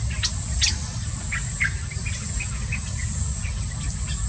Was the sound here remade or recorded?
recorded